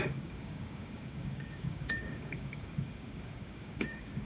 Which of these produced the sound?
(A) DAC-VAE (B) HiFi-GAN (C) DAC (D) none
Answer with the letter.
C